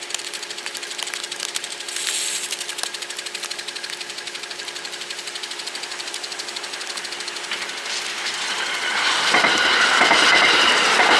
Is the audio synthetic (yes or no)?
no